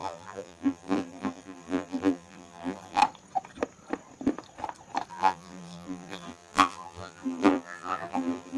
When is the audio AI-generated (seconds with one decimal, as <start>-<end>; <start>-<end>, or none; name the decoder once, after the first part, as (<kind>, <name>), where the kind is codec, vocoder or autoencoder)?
0.0-3.0 (vocoder, BigVGAN v2); 5.1-8.6